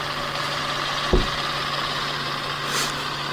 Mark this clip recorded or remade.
recorded